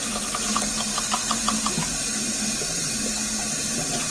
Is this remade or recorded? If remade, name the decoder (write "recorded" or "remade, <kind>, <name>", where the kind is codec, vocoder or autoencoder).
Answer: recorded